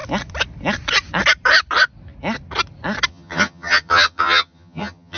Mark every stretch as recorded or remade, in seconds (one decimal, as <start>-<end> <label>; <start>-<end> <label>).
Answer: 0.0-3.1 recorded; 3.1-5.2 remade